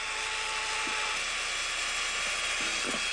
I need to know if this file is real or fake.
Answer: real